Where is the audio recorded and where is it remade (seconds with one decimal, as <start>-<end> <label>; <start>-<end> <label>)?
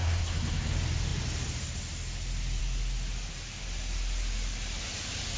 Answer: 0.0-0.7 remade; 0.7-5.4 recorded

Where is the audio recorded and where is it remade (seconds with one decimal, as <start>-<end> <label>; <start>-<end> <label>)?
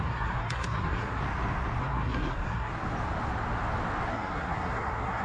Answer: 0.0-1.2 remade; 1.2-1.8 recorded; 1.8-2.7 remade; 2.7-4.1 recorded; 4.1-5.2 remade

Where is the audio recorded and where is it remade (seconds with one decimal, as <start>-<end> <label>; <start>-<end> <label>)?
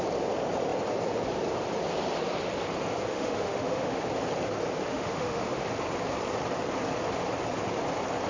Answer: 0.0-3.1 recorded; 3.1-4.1 remade; 4.1-4.9 recorded; 4.9-5.6 remade; 5.6-8.3 recorded